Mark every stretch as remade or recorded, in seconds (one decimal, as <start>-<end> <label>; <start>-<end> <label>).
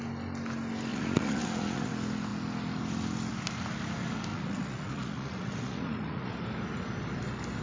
0.0-0.9 recorded; 0.9-1.9 remade; 1.9-4.3 recorded; 4.3-6.3 remade; 6.3-7.6 recorded